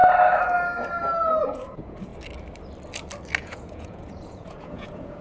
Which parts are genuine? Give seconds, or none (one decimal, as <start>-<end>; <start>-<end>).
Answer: 0.0-1.4; 2.1-3.4